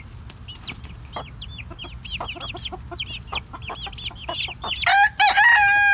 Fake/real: real